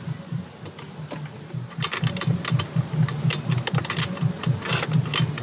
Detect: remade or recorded recorded